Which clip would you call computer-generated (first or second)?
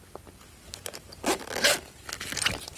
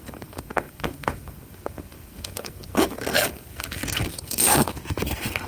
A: second